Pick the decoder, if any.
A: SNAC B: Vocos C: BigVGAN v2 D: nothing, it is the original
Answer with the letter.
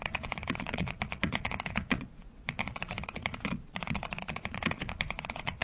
B